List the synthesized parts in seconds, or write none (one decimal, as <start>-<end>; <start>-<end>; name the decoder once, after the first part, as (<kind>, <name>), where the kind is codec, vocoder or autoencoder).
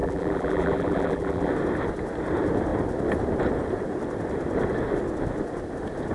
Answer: 0.0-1.5 (vocoder, BigVGAN v2)